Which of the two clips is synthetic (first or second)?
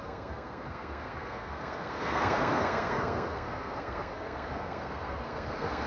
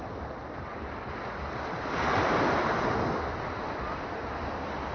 first